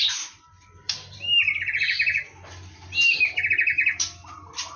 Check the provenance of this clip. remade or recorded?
remade